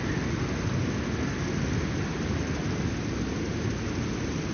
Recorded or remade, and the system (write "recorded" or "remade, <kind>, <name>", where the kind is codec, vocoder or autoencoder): recorded